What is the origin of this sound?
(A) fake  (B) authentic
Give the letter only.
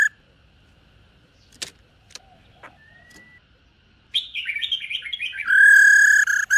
B